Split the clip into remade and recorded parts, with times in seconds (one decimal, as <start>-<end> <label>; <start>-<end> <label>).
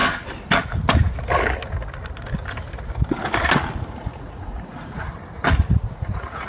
0.0-3.9 recorded; 3.9-5.1 remade; 5.1-5.7 recorded; 5.7-6.5 remade